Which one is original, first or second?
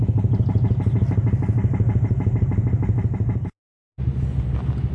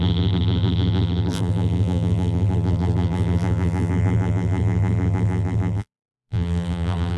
first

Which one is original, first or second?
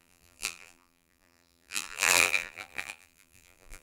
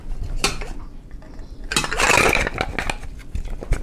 second